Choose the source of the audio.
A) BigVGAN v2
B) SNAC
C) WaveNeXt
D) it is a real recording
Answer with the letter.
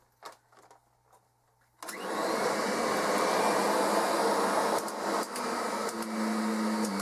D